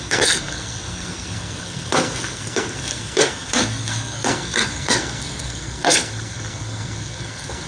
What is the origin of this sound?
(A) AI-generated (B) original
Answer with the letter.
A